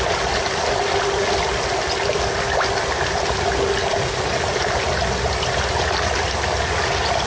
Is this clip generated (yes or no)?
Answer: no